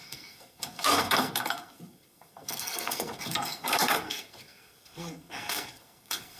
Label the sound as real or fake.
fake